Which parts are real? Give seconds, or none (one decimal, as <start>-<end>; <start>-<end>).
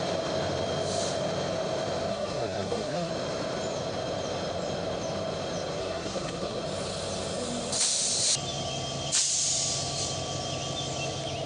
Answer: 0.0-2.1; 3.1-5.8; 6.6-11.5